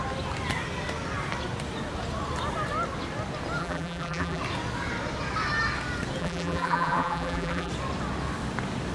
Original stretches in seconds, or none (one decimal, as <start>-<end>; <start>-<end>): 0.0-3.6; 4.4-6.2; 7.7-8.9